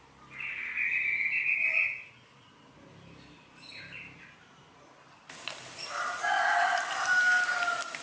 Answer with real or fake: real